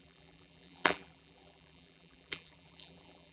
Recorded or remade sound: remade